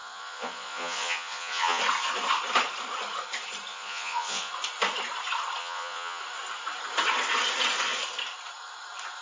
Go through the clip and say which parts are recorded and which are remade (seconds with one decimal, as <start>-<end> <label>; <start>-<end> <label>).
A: 0.0-1.8 remade; 1.8-3.7 recorded; 3.7-4.5 remade; 4.5-5.6 recorded; 5.6-6.2 remade; 6.2-9.2 recorded